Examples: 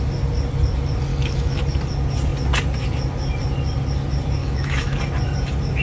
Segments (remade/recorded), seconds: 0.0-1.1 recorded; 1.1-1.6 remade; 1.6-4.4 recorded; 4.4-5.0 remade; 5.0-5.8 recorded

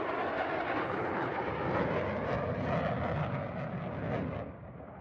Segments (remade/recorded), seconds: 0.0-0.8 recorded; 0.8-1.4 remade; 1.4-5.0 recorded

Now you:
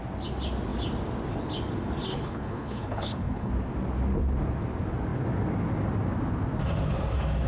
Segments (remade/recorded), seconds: 0.0-2.1 recorded; 2.1-3.5 remade; 3.5-7.5 recorded

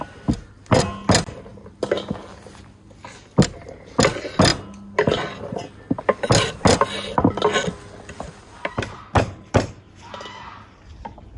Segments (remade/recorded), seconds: 0.0-11.4 recorded